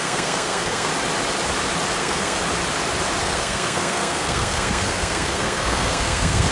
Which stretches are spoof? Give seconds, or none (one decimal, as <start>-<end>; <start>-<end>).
0.0-0.9; 2.0-2.4; 3.2-6.5